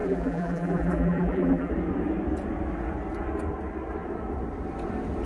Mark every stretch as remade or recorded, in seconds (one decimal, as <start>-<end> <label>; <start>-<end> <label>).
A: 0.0-1.7 remade; 1.7-5.3 recorded